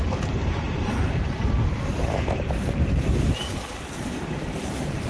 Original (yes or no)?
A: yes